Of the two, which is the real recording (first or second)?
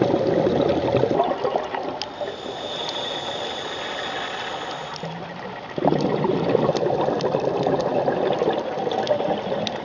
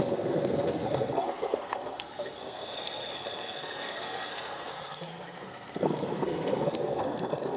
first